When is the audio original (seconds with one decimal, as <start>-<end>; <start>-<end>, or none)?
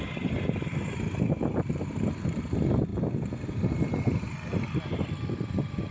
0.0-5.9